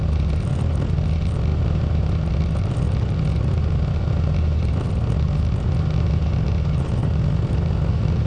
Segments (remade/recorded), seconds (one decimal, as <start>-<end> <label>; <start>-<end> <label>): 0.0-7.0 recorded; 7.0-7.7 remade; 7.7-8.3 recorded